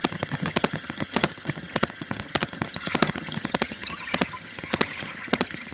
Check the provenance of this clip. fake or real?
fake